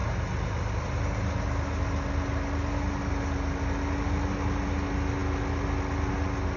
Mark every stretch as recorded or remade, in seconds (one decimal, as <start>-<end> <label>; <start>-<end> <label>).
0.0-6.6 recorded